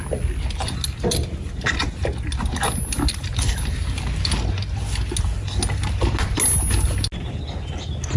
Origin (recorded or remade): recorded